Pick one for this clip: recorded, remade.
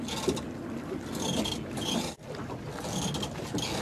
recorded